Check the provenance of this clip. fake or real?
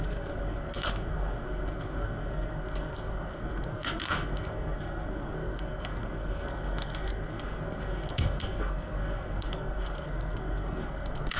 fake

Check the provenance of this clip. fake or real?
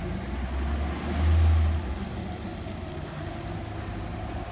real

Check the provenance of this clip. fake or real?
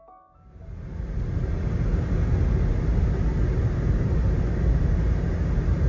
real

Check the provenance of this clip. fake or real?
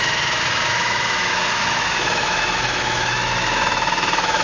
fake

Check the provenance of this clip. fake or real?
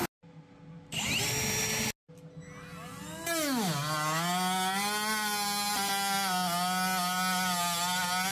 real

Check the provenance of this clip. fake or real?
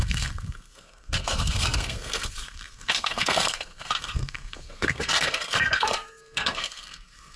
fake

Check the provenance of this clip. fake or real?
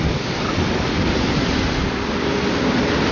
real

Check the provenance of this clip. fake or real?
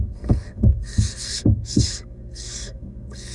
fake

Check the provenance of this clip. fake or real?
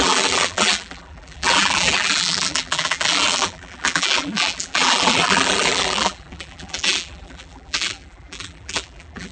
fake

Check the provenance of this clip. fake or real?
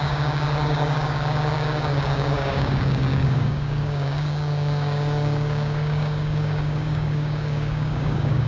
fake